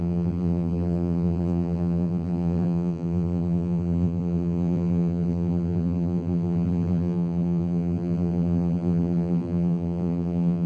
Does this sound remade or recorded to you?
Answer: remade